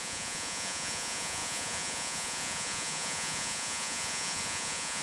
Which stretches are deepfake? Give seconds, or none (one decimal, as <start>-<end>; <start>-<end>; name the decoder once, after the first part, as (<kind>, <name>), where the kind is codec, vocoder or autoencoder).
0.0-5.0 (vocoder, Vocos)